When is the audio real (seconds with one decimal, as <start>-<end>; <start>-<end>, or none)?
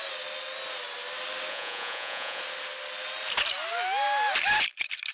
0.0-1.5; 2.4-5.1